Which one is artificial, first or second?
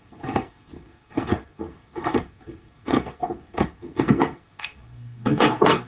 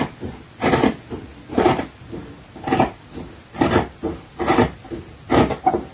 first